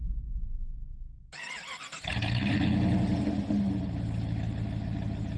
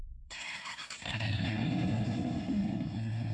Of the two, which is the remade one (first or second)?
second